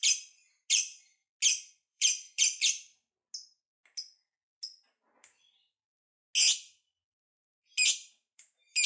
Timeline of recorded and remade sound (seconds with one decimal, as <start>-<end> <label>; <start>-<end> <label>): 0.0-0.7 recorded; 0.7-1.1 remade; 1.1-1.6 recorded; 1.6-2.9 remade; 2.9-7.9 recorded; 7.9-8.9 remade